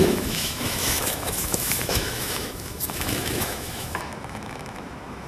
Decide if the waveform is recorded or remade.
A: remade